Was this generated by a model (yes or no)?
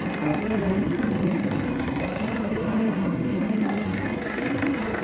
yes